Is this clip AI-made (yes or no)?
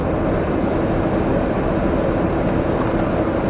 no